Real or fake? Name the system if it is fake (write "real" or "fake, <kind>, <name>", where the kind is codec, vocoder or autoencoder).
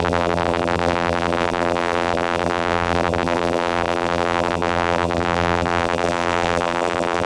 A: fake, vocoder, BigVGAN v2